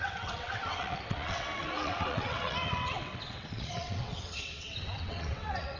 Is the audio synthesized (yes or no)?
yes